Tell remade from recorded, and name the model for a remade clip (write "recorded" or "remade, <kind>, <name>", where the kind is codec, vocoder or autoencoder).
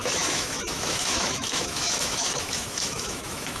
remade, autoencoder, DAC-VAE